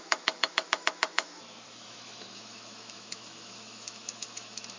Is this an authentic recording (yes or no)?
no